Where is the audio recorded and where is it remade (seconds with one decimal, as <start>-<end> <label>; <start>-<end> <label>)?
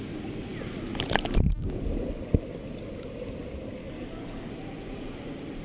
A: 0.0-3.8 recorded; 3.8-4.5 remade; 4.5-5.6 recorded